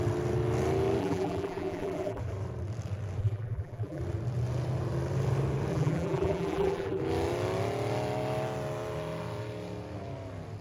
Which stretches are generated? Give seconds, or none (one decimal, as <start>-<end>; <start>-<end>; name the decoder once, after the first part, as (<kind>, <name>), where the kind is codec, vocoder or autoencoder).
1.0-2.2 (vocoder, BigVGAN v2); 3.2-4.0; 5.7-7.0